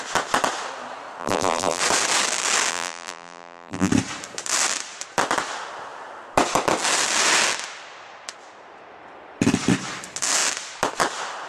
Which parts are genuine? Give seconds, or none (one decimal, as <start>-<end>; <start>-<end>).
0.0-1.2; 1.8-2.7; 3.9-11.5